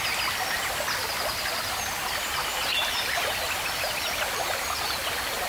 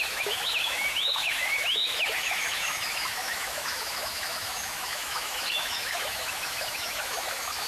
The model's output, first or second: second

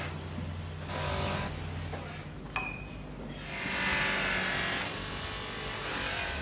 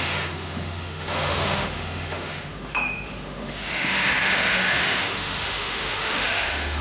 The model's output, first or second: second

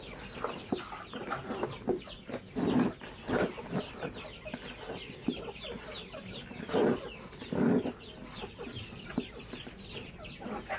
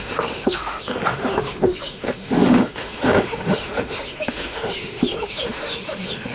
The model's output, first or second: second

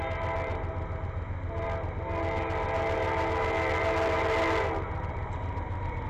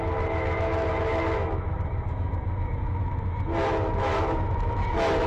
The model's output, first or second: second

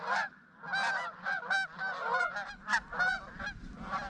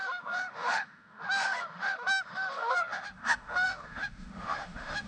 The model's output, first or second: second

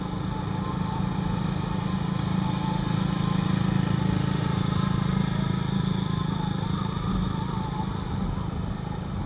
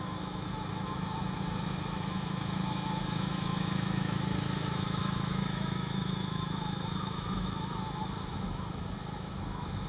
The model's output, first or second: second